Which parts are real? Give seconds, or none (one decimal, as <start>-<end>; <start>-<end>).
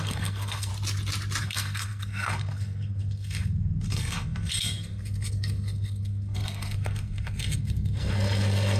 0.7-1.4